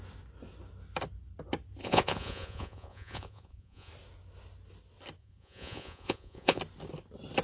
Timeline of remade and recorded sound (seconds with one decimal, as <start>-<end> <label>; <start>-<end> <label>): 0.0-1.8 recorded; 1.8-3.9 remade; 3.9-5.2 recorded; 5.2-6.6 remade; 6.6-7.4 recorded